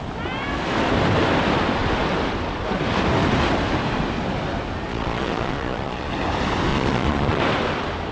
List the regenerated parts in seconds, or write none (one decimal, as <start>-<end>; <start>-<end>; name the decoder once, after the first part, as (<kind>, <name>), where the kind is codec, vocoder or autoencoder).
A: 4.9-6.1 (vocoder, Vocos); 6.7-7.4